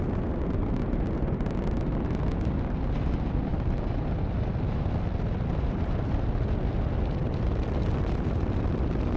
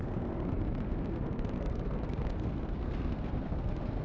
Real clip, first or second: first